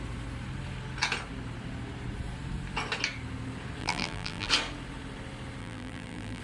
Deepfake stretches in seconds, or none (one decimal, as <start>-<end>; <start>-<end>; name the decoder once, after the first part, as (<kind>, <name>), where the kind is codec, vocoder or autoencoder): 3.8-4.5 (vocoder, BigVGAN v2); 5.6-6.4